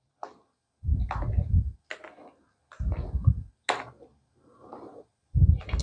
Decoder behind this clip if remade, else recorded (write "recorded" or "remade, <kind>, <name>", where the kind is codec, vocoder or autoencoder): recorded